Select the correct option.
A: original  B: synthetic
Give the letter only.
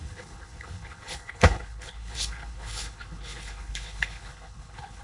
B